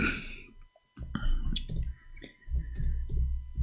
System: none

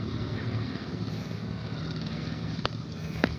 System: codec, SNAC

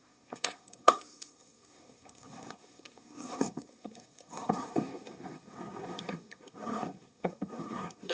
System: codec, SNAC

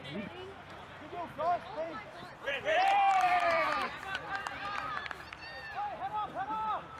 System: vocoder, BigVGAN v2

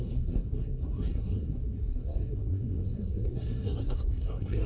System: codec, SNAC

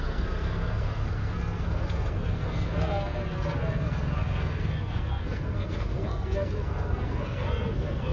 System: codec, SNAC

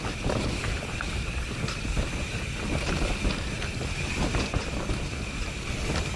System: none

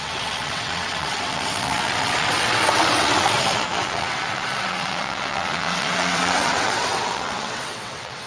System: vocoder, WaveNeXt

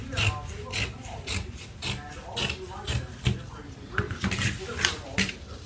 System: none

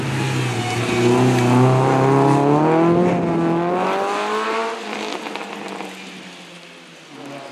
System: none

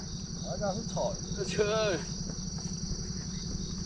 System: none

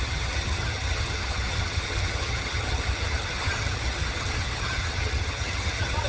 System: vocoder, HiFi-GAN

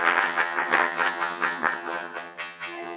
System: vocoder, HiFi-GAN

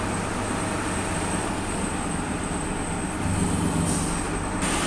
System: none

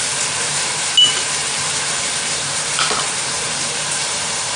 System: vocoder, BigVGAN v2